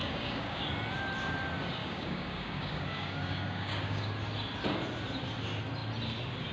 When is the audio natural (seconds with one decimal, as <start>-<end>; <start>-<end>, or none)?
0.6-1.8; 4.1-6.5